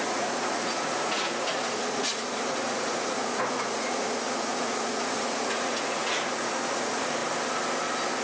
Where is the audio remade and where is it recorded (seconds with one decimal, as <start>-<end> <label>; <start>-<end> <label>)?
0.0-7.2 remade; 7.2-8.2 recorded